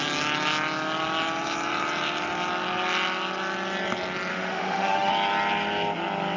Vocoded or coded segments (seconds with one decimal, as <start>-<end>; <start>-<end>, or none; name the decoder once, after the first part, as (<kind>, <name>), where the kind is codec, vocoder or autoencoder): 4.3-5.1 (autoencoder, DAC-VAE)